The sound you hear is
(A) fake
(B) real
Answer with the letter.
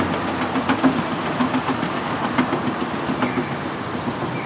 B